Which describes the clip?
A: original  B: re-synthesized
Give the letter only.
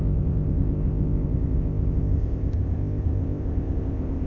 B